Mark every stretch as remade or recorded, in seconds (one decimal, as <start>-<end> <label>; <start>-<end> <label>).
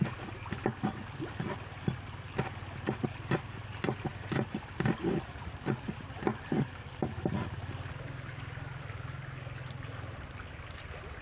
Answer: 0.0-11.2 recorded